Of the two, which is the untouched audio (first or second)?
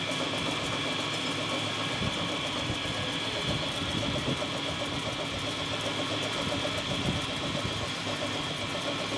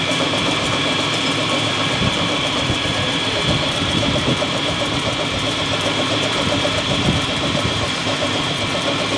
first